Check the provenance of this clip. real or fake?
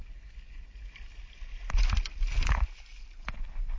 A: real